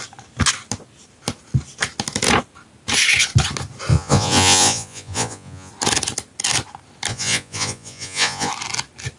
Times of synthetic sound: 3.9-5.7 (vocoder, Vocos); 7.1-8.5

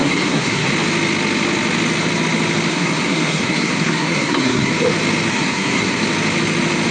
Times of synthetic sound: 0.0-0.7 (codec, SNAC); 2.7-4.7; 5.3-6.0